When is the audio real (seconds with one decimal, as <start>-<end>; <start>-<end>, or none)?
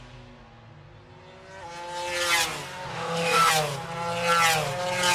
0.0-2.9; 3.5-5.1